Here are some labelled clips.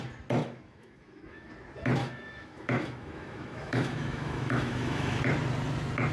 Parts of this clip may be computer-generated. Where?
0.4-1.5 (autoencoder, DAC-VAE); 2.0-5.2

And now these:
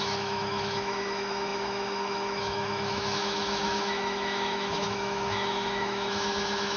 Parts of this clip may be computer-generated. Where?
0.0-6.8 (autoencoder, DAC-VAE)

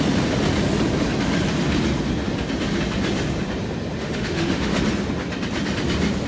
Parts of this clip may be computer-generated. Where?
4.0-4.8 (autoencoder, DAC-VAE)

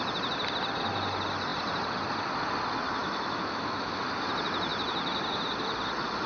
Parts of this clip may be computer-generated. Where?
3.0-4.0 (autoencoder, DAC-VAE)

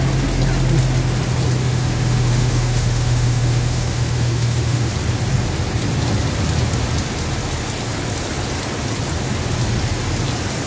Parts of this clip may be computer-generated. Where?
1.6-4.9 (autoencoder, DAC-VAE)